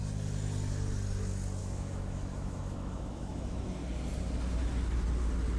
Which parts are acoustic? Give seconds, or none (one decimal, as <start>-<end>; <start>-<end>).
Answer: 0.0-1.6; 3.6-5.6